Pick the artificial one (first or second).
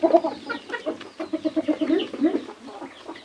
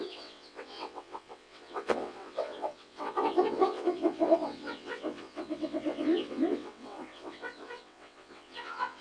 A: second